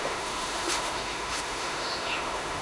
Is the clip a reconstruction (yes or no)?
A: yes